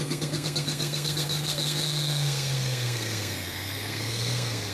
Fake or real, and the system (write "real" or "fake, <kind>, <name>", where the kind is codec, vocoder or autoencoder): fake, codec, SNAC